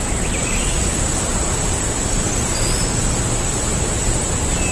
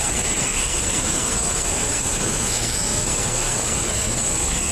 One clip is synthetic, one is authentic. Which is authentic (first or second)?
first